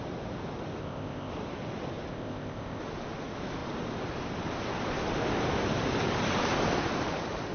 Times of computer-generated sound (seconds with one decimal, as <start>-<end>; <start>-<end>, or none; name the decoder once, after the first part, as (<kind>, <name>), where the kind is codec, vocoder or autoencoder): 0.8-1.3 (codec, ZipCodec); 2.1-2.8